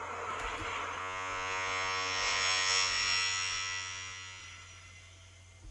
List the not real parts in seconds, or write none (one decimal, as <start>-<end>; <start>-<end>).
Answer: 1.0-4.4